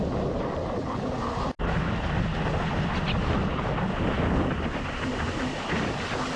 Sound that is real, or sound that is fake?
real